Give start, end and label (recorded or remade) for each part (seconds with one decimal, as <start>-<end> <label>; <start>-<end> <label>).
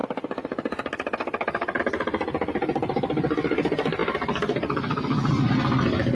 0.0-6.1 recorded